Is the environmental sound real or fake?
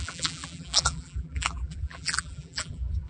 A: fake